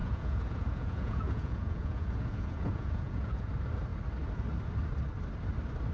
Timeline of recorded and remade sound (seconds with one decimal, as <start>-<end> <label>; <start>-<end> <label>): 0.0-3.5 remade; 3.5-5.9 recorded